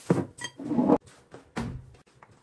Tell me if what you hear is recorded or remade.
recorded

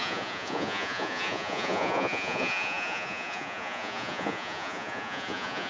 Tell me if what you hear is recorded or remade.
remade